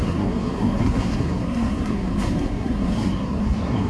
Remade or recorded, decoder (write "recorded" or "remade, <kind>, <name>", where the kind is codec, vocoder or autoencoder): remade, codec, SNAC